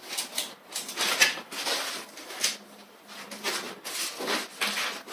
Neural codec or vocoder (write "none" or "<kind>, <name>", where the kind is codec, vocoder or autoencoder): none